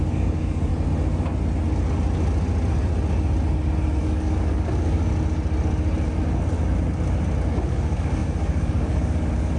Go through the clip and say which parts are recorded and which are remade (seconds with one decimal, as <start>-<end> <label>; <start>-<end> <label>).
0.0-0.7 remade; 0.7-4.0 recorded; 4.0-5.1 remade; 5.1-7.5 recorded; 7.5-9.6 remade